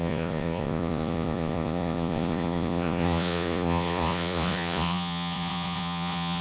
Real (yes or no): no